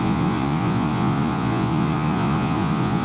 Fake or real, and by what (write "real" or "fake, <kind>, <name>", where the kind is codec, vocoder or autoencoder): fake, vocoder, Vocos